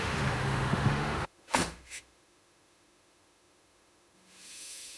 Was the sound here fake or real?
fake